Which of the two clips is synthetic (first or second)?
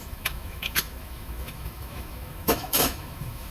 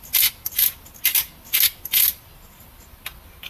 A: first